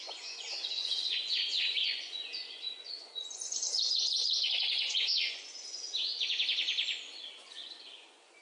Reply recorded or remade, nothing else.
remade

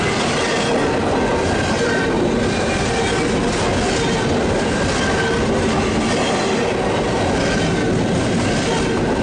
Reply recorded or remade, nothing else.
recorded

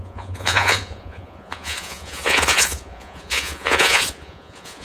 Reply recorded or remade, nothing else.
remade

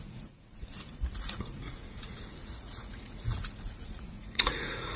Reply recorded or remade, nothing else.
remade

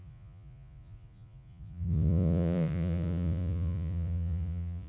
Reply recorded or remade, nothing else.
remade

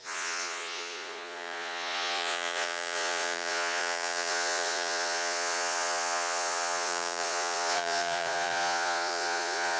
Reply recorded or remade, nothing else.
remade